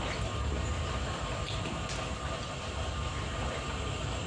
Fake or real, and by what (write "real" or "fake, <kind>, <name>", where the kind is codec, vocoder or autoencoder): real